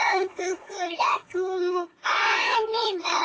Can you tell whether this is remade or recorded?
remade